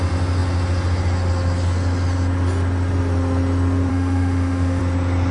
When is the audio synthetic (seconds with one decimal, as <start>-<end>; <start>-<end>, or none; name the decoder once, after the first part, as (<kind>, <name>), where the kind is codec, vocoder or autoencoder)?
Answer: 3.9-4.8 (autoencoder, DAC-VAE)